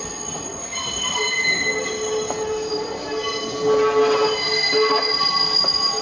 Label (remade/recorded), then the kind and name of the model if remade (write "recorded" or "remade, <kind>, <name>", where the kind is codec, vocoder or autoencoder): recorded